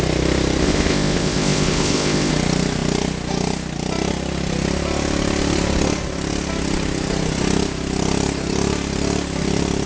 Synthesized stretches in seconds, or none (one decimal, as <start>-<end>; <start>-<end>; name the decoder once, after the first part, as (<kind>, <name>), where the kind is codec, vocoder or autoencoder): 0.6-2.3 (codec, ZipCodec)